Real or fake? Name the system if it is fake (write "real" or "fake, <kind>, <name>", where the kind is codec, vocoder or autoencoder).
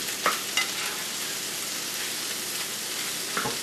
real